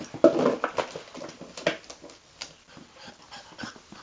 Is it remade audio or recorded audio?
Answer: recorded